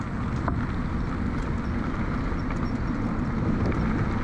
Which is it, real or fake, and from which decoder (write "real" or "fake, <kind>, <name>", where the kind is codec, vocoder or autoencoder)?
real